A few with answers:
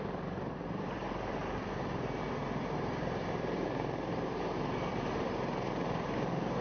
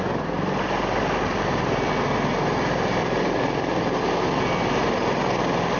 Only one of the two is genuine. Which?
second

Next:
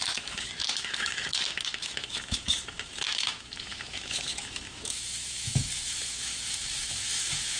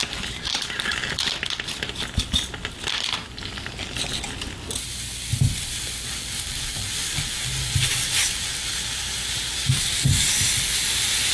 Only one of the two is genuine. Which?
second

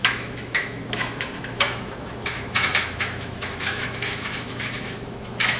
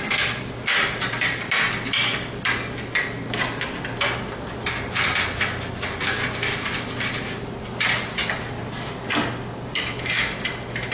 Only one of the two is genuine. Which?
second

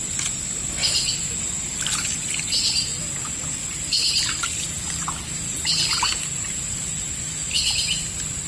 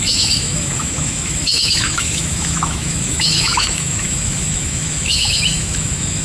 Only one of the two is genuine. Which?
first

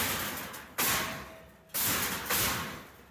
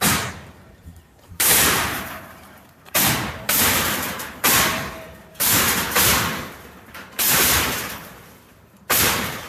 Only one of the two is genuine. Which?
first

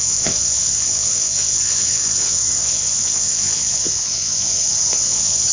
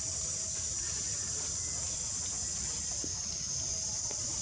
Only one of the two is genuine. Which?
second